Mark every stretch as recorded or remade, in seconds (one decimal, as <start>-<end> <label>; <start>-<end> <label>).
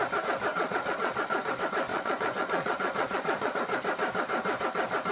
0.0-0.5 recorded; 0.5-1.5 remade; 1.5-1.9 recorded; 1.9-3.6 remade; 3.6-5.1 recorded